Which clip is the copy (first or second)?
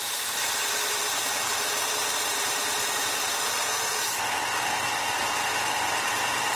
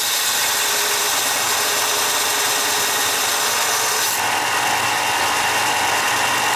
first